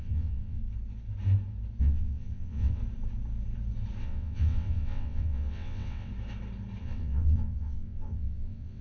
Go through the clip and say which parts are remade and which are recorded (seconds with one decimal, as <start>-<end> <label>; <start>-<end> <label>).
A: 0.0-0.6 remade; 0.6-1.8 recorded; 1.8-2.8 remade; 2.8-4.0 recorded; 4.0-6.1 remade; 6.1-6.8 recorded; 6.8-8.8 remade